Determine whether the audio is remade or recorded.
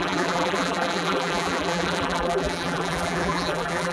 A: remade